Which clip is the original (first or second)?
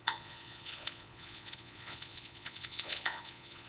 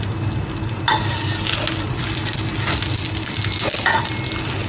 second